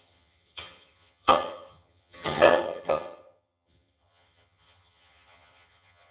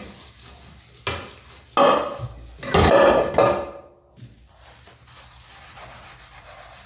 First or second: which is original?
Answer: second